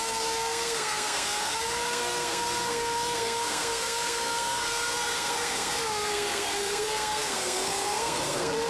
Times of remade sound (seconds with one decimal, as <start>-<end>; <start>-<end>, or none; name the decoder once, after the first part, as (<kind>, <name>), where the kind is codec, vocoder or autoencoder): 0.0-8.7 (codec, SNAC)